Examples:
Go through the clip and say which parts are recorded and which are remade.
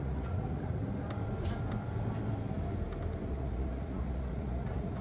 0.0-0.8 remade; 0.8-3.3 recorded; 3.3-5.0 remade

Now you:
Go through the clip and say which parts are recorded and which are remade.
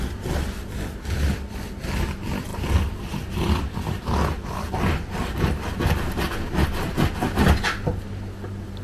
0.0-8.8 recorded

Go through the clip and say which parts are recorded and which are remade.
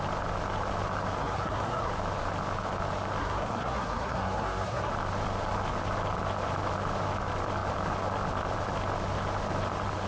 0.0-1.2 recorded; 1.2-1.9 remade; 1.9-3.2 recorded; 3.2-4.9 remade; 4.9-10.1 recorded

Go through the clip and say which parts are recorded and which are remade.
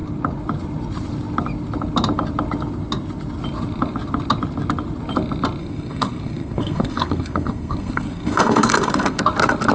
0.0-5.6 recorded; 5.6-9.2 remade; 9.2-9.7 recorded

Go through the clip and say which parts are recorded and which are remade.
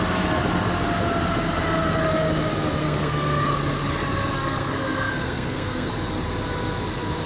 0.0-2.8 recorded; 2.8-3.5 remade; 3.5-4.3 recorded; 4.3-5.9 remade; 5.9-7.3 recorded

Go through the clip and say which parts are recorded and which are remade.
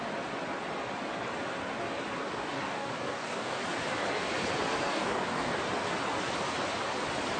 0.0-2.2 recorded; 2.2-3.6 remade; 3.6-4.9 recorded; 4.9-5.5 remade; 5.5-7.4 recorded